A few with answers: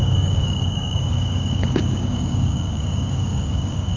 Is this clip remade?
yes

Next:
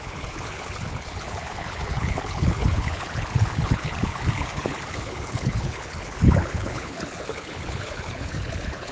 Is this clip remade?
yes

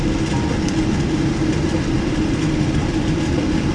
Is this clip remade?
no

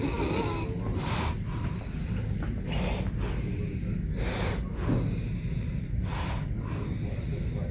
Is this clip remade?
no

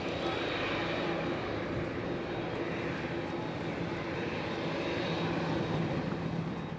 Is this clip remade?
no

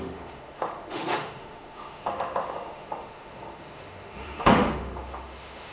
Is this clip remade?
yes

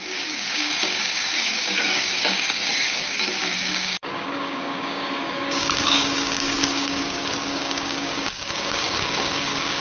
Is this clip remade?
yes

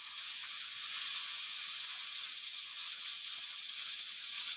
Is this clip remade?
yes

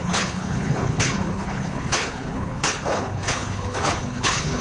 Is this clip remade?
yes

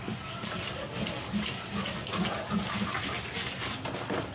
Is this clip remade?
no